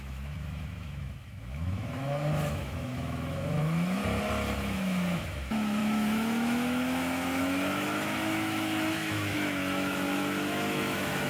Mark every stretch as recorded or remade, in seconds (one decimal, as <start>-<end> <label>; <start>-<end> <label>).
0.0-4.0 remade; 4.0-4.5 recorded; 4.5-11.3 remade